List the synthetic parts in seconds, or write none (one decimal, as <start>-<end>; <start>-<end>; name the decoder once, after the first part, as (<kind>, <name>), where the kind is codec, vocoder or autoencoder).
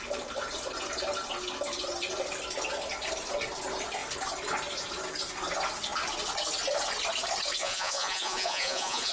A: 7.6-9.1 (vocoder, Vocos)